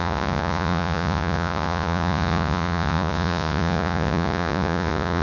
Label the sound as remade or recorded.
remade